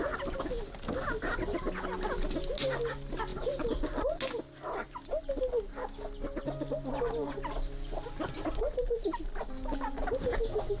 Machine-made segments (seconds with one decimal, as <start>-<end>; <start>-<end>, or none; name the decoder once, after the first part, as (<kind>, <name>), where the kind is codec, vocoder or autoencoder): none